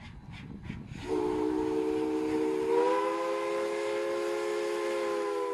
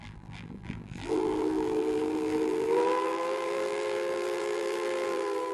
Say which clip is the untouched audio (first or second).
first